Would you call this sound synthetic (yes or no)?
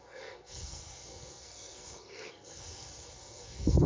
yes